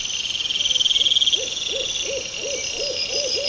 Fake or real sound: real